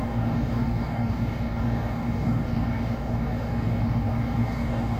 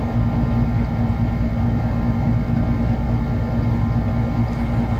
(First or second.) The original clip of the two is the second